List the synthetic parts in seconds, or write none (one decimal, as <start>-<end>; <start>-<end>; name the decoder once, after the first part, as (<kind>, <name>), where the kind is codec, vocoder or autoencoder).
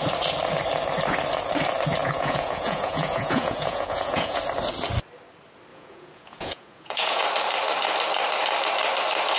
2.0-4.4 (vocoder, Vocos); 5.7-7.2